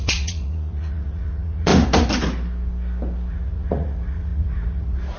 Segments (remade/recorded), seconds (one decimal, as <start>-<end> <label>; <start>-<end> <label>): 0.0-1.7 remade; 1.7-3.3 recorded; 3.3-5.2 remade